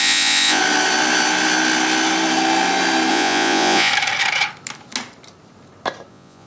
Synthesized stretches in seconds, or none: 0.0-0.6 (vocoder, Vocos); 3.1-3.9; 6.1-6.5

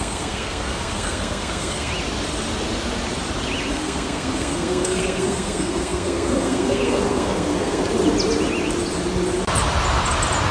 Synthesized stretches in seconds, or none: 0.0-1.9 (codec, SNAC); 3.7-7.8